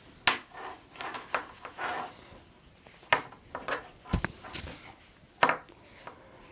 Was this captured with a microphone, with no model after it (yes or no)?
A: yes